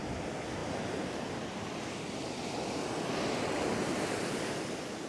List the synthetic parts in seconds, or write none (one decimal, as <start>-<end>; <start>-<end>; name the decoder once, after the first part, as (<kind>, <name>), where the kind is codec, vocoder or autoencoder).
none